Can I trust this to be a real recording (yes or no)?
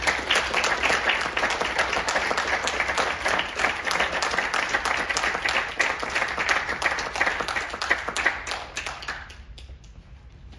yes